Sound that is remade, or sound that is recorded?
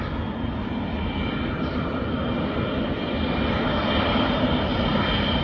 recorded